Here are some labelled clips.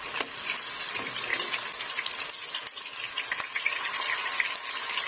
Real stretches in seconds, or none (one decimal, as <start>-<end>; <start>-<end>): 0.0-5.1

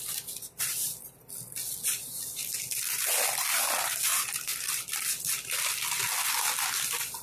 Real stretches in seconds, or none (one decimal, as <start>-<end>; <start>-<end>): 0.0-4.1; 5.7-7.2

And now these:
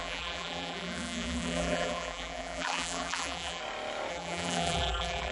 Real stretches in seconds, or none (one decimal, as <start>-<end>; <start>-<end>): 3.6-4.1